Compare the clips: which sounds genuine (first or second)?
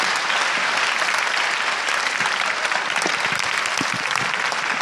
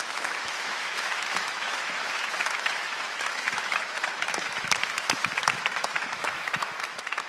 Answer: first